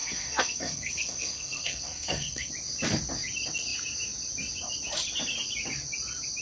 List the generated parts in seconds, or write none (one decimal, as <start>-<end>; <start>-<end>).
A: 0.0-2.5